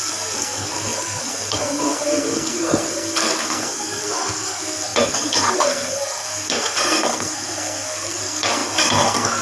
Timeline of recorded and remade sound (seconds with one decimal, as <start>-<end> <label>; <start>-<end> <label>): 0.0-9.4 remade